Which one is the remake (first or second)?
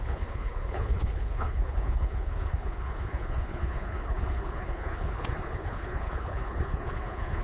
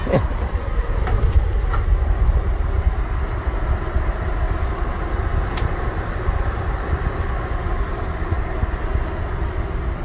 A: first